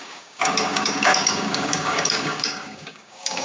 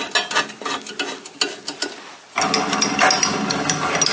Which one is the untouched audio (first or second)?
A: second